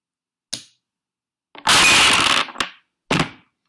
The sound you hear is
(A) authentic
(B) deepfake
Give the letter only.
A